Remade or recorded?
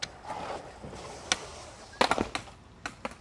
recorded